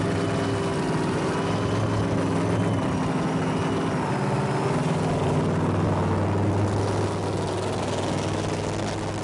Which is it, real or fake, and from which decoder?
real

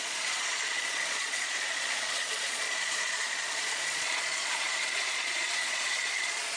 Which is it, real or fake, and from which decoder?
fake, vocoder, Vocos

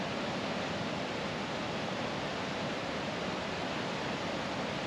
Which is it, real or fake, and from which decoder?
real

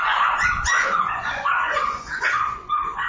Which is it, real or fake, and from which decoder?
fake, vocoder, Vocos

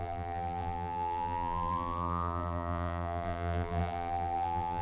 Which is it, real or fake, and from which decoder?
fake, vocoder, BigVGAN v2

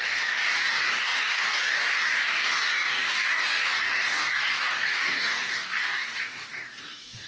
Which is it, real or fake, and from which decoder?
fake, codec, DAC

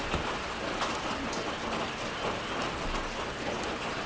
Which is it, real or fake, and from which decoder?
real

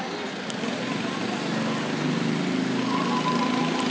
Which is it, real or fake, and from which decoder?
real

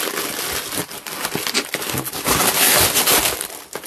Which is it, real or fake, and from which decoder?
real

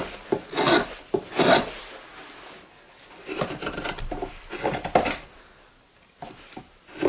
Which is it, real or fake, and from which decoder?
real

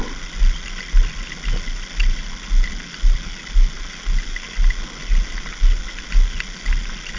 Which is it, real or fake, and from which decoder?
real